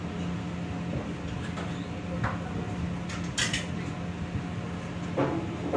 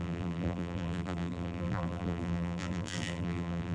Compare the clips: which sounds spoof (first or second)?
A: second